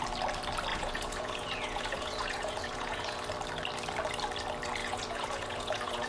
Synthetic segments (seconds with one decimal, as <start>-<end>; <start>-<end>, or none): 0.7-3.2; 4.8-6.1